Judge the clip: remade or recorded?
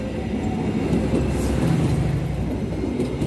recorded